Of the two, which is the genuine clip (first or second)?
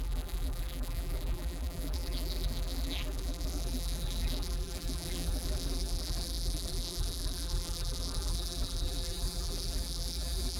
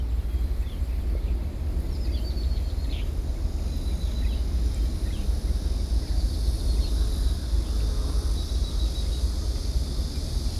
second